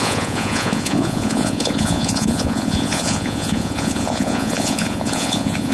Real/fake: fake